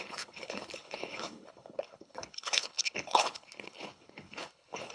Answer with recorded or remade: remade